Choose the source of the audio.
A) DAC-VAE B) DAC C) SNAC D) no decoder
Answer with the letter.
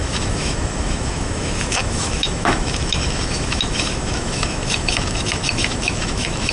A